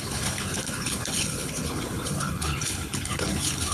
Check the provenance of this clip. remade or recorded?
remade